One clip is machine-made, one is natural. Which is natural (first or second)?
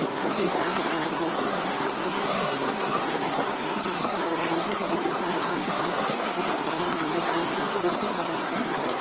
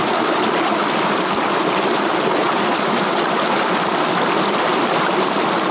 second